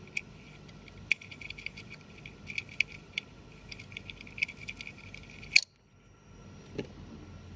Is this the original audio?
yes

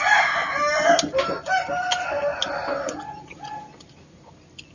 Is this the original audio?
yes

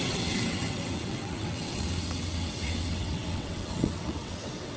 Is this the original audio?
no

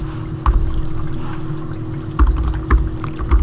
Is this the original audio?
yes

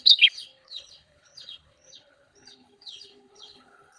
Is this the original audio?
no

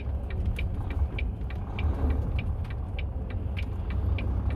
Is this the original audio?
yes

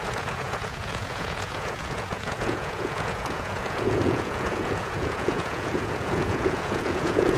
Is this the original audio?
no